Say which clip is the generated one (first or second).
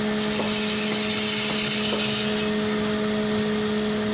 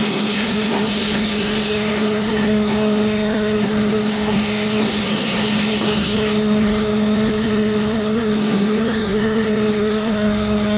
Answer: second